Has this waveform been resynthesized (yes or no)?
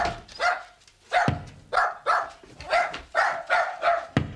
no